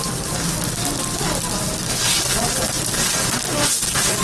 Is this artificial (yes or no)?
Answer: no